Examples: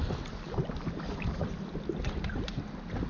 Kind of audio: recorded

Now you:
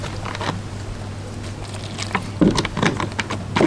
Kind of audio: recorded